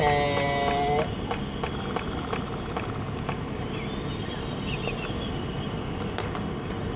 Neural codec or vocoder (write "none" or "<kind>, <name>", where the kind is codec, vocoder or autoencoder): none